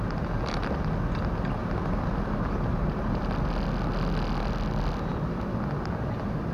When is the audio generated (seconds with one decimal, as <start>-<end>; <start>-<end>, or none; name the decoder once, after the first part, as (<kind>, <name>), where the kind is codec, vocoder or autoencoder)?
2.7-3.2 (vocoder, BigVGAN v2)